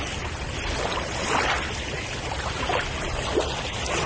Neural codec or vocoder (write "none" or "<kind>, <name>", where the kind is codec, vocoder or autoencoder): none